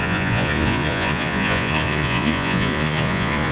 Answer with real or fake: fake